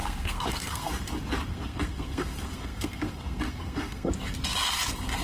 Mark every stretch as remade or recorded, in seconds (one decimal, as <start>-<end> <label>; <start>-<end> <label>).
0.0-0.9 remade; 0.9-1.5 recorded; 1.5-4.1 remade; 4.1-5.2 recorded